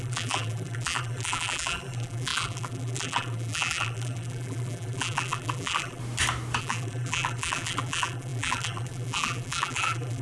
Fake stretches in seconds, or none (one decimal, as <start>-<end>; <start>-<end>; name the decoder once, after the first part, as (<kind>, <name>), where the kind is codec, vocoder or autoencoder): 0.0-6.0 (vocoder, BigVGAN v2); 6.6-10.2

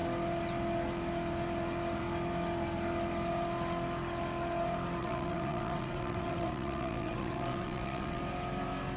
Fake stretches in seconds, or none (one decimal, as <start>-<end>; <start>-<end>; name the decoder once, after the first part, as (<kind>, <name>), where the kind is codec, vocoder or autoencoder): 5.0-8.2 (vocoder, WaveNeXt)